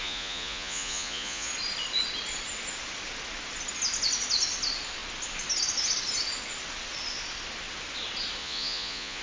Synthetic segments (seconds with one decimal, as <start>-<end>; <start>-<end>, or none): 0.0-1.5; 8.4-9.2